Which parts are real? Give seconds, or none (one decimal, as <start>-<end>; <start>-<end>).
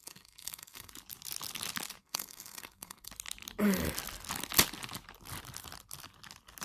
0.9-2.0; 3.1-6.6